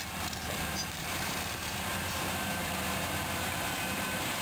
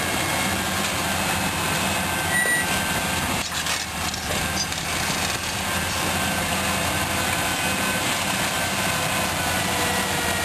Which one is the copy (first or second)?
first